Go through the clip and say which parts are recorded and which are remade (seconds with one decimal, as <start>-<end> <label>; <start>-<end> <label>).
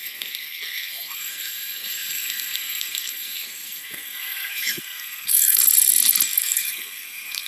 0.0-5.6 remade; 5.6-6.4 recorded; 6.4-7.5 remade